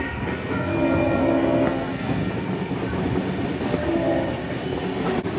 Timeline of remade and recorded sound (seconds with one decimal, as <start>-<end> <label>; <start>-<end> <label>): 0.0-0.7 remade; 0.7-1.2 recorded; 1.2-2.2 remade; 2.2-5.4 recorded

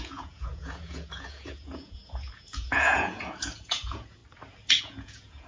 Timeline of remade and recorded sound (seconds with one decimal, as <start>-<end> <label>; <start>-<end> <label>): 0.0-4.2 remade; 4.2-4.8 recorded; 4.8-5.5 remade

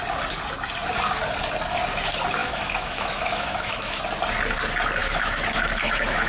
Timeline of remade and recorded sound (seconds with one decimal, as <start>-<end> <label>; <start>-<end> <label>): 0.0-2.4 recorded; 2.4-4.0 remade; 4.0-5.0 recorded; 5.0-6.3 remade

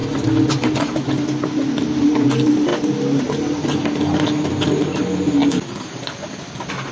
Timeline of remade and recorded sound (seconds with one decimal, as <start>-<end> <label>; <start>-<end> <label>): 0.0-6.9 recorded

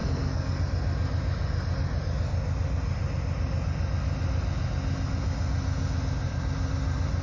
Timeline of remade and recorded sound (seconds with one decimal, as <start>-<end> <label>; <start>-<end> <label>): 0.0-0.6 remade; 0.6-7.2 recorded

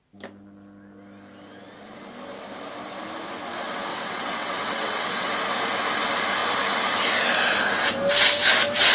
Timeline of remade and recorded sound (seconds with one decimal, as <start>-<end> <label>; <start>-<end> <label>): 0.0-3.9 recorded; 3.9-5.3 remade; 5.3-8.9 recorded

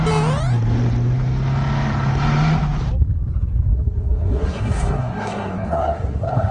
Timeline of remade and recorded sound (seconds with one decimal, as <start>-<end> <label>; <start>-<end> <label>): 0.0-3.7 recorded; 3.7-6.5 remade